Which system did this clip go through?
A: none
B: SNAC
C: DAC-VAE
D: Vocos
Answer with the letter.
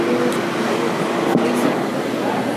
A